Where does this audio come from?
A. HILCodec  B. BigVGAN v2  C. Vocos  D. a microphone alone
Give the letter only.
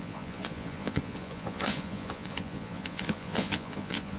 C